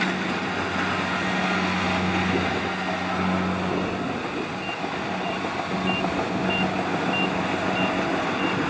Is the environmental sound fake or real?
real